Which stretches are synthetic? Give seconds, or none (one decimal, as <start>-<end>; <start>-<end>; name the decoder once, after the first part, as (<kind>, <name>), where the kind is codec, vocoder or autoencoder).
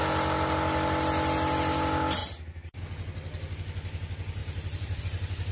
2.2-2.8 (vocoder, BigVGAN v2); 4.4-5.0